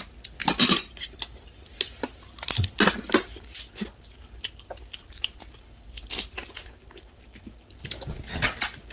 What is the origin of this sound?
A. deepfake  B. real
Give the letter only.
B